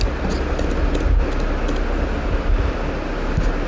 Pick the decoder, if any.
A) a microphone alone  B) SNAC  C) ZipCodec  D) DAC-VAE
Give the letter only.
A